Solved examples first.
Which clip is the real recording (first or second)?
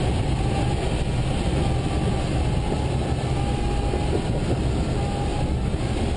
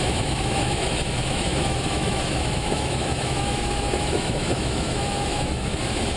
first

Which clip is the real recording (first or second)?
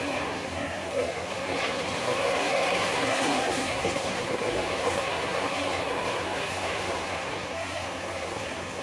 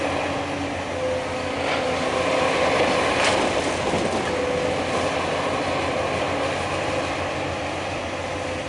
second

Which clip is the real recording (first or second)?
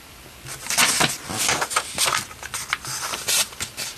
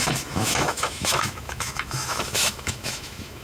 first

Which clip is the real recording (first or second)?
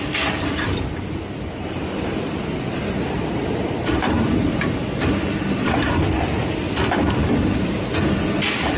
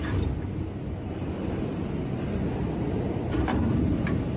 second